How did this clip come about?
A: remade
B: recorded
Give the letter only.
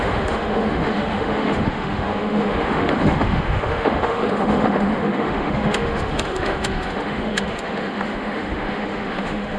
A